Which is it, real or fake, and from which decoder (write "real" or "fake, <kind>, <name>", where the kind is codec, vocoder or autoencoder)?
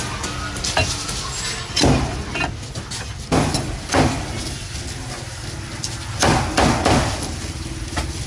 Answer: real